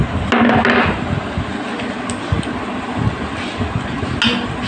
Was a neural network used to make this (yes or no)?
no